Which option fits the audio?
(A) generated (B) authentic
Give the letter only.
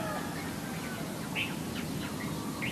B